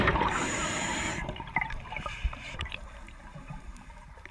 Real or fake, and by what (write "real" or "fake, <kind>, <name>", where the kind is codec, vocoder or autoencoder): fake, vocoder, BigVGAN v2